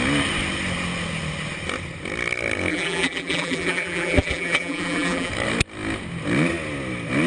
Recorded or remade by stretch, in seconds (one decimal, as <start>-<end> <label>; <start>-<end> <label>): 0.0-2.7 recorded; 2.7-5.3 remade; 5.3-7.3 recorded